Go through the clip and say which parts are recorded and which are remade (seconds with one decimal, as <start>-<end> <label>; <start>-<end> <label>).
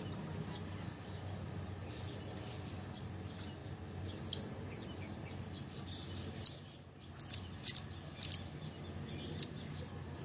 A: 0.0-10.2 recorded